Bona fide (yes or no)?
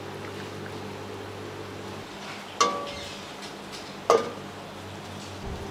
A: yes